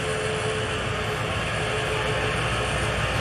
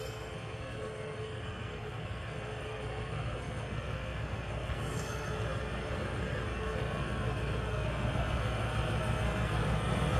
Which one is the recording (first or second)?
first